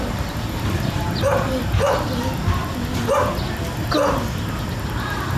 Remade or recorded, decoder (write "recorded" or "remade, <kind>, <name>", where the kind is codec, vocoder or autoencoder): recorded